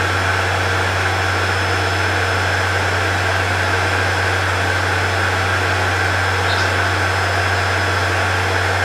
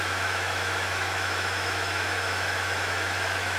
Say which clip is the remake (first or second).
second